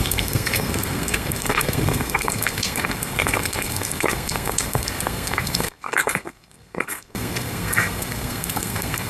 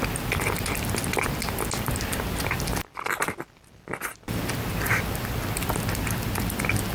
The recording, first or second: second